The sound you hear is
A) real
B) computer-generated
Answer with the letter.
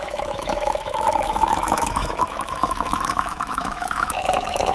B